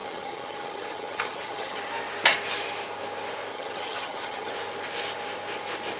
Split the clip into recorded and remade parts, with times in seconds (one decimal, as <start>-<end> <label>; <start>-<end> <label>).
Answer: 0.0-1.8 remade; 1.8-3.5 recorded; 3.5-4.5 remade; 4.5-6.0 recorded